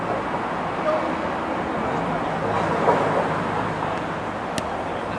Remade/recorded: recorded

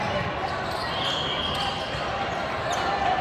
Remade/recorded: recorded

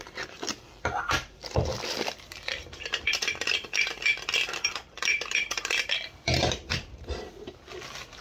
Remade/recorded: remade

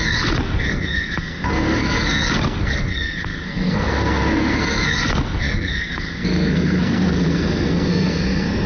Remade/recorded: remade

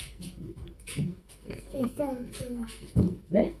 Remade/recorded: remade